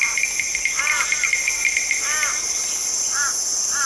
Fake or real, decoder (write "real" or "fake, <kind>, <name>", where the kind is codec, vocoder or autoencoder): real